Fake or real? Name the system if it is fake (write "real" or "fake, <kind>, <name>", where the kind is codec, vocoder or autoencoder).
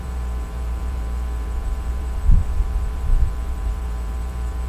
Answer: fake, vocoder, BigVGAN v2